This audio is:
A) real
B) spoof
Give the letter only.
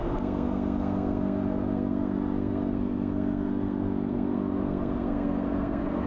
B